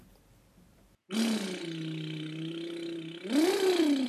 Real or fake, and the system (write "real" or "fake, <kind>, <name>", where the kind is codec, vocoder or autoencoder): real